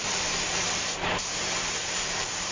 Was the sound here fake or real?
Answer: fake